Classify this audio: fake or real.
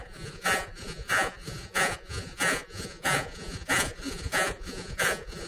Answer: fake